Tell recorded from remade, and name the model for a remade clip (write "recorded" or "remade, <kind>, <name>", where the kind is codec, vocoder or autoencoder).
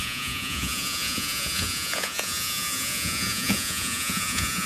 remade, vocoder, Vocos